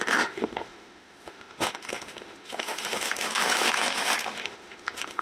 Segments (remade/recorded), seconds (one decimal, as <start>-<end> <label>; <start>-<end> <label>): 0.0-5.2 remade